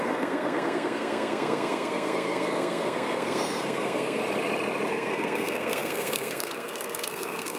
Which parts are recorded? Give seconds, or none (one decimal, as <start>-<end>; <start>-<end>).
4.2-4.9

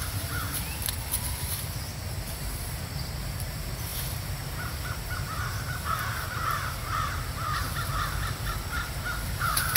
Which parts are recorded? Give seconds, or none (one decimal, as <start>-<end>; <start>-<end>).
0.8-2.3; 7.6-8.8

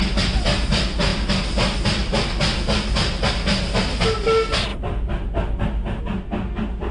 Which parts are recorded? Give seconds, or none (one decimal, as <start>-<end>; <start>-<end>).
0.0-6.9

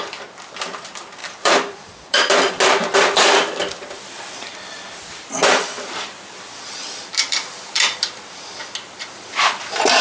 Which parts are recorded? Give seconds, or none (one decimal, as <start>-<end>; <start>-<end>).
0.0-1.2; 2.5-5.4; 8.6-10.0

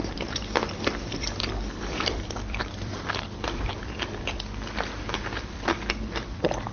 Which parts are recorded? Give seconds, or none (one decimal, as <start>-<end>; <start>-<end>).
3.7-5.2